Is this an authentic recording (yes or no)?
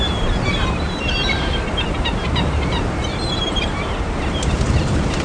no